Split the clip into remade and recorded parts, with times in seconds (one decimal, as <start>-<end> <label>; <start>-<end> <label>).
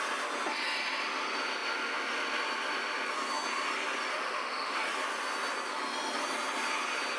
0.0-4.1 recorded; 4.1-4.8 remade; 4.8-7.2 recorded